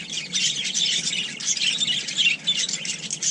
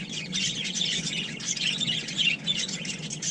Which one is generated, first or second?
second